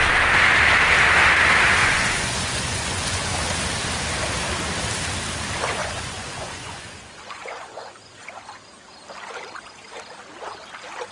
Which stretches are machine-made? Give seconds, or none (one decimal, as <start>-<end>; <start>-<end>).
1.8-3.3; 5.8-8.2